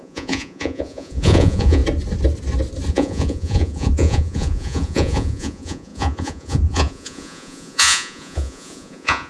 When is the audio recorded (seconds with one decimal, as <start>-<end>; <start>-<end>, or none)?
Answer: 1.8-2.9